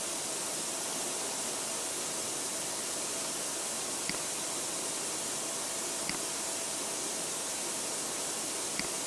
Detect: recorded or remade recorded